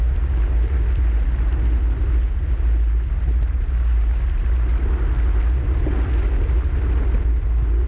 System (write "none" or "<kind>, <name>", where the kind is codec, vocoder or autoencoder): none